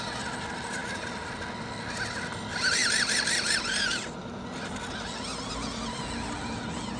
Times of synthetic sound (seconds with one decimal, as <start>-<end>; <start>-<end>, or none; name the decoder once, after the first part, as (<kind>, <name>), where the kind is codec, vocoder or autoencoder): none